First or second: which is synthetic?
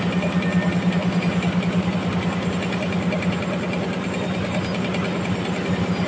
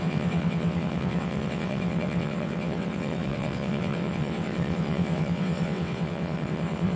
second